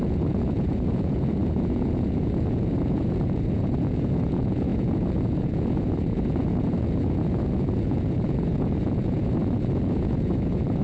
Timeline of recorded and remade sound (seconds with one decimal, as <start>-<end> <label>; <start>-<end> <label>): 0.0-10.8 remade